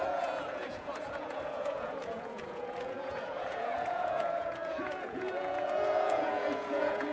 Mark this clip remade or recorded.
remade